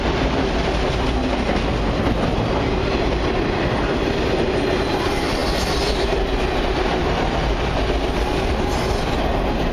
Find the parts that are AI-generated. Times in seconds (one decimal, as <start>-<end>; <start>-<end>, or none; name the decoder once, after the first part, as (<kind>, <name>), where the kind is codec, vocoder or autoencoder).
7.0-7.8 (vocoder, BigVGAN v2)